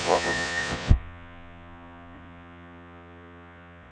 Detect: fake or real fake